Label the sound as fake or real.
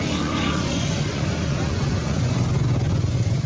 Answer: fake